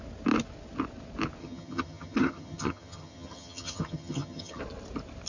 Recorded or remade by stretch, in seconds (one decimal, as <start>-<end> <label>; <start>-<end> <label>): 0.0-1.4 recorded; 1.4-4.6 remade; 4.6-5.3 recorded